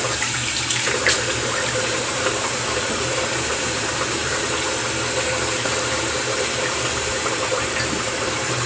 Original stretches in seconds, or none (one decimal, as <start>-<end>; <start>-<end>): 4.2-5.9